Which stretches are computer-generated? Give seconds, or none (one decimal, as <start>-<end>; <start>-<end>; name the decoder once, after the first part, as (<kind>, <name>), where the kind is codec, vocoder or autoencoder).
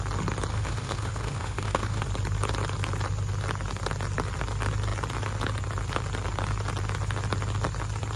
0.5-2.0 (autoencoder, DAC-VAE)